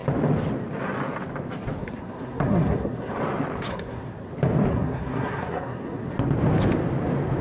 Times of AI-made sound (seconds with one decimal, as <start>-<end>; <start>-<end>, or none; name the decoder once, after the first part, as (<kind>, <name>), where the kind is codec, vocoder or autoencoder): 1.8-3.1 (codec, SNAC); 3.7-4.3; 4.7-6.1